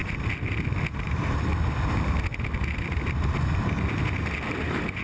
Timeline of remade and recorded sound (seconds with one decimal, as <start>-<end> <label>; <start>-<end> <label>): 0.0-0.9 recorded; 0.9-1.5 remade; 1.5-4.5 recorded; 4.5-5.0 remade